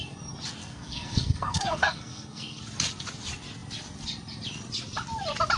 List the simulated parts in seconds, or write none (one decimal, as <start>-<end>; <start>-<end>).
0.6-2.6

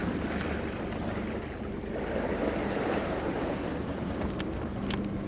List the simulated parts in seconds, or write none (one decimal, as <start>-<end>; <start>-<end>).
2.6-4.3

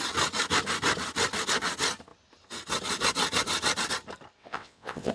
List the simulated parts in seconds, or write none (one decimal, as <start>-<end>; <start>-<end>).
4.4-5.1

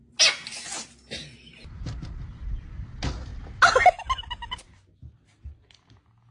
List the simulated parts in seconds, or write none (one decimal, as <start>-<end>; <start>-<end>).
none

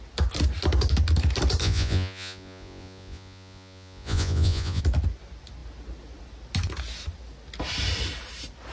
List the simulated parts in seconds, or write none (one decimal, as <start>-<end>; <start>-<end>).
1.6-4.8

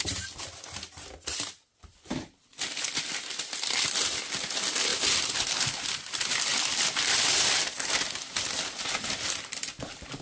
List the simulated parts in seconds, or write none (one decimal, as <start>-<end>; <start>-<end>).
none

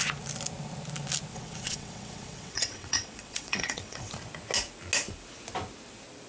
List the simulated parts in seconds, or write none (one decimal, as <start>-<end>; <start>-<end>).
1.3-4.1

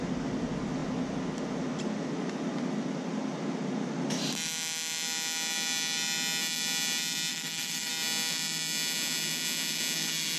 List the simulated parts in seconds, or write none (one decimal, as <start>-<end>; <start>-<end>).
7.3-7.9